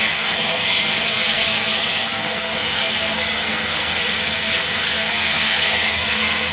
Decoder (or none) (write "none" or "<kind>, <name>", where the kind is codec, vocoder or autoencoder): codec, SNAC